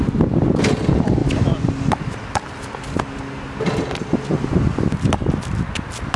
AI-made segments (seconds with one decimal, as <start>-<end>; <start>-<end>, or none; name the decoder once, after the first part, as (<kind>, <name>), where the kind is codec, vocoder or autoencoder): none